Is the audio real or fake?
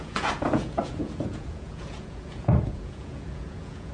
fake